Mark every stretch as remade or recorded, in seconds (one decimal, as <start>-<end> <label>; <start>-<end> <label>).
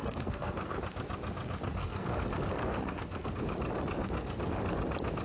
0.0-0.8 remade; 0.8-1.8 recorded; 1.8-3.3 remade; 3.3-5.2 recorded